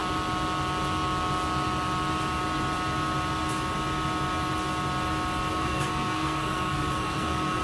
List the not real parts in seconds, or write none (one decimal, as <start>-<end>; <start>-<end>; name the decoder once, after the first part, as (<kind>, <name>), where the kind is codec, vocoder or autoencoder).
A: 5.5-7.6 (codec, SNAC)